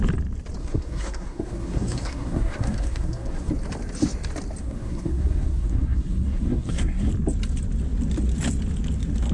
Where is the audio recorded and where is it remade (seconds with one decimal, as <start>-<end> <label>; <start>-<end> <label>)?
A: 0.0-0.6 recorded; 0.6-3.5 remade; 3.5-4.6 recorded; 4.6-7.1 remade; 7.1-9.3 recorded